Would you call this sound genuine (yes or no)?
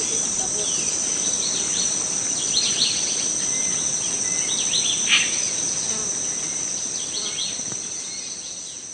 yes